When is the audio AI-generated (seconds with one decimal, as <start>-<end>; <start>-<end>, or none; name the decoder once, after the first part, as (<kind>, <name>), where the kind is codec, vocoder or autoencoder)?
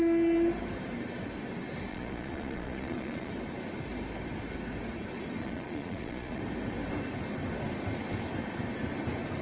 1.9-3.3 (vocoder, Vocos); 5.4-6.4